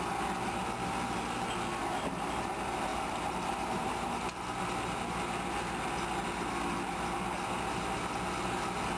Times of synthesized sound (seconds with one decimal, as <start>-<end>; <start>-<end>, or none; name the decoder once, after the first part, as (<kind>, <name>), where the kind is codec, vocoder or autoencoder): 1.8-2.5 (vocoder, BigVGAN v2); 2.9-4.6